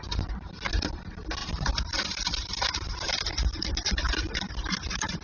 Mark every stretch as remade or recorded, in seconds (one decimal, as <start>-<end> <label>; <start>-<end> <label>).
0.0-1.4 recorded; 1.4-4.5 remade; 4.5-5.2 recorded